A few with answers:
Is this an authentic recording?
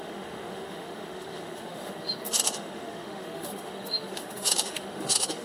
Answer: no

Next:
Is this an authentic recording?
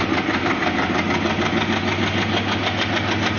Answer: yes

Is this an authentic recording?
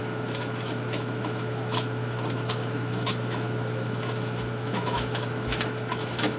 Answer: no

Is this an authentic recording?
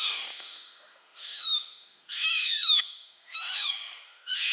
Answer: no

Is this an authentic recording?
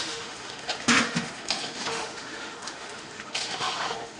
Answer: no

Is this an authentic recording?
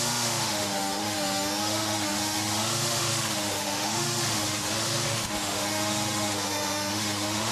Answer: no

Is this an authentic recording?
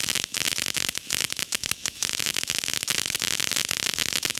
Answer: no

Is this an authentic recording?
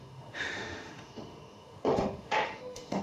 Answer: no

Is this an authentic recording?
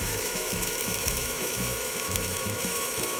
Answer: no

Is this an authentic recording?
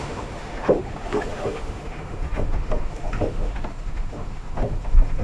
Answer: no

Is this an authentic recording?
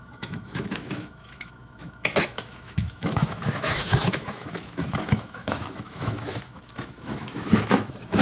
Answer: no